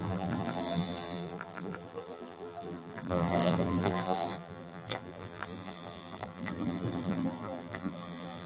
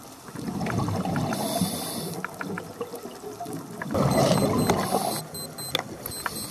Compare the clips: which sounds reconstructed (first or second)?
first